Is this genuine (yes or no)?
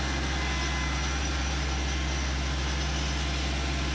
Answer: yes